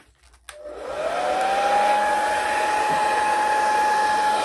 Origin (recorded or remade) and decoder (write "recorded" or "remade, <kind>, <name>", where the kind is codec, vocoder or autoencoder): recorded